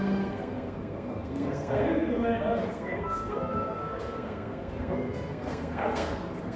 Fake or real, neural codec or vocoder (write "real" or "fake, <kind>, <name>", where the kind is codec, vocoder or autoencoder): fake, codec, SNAC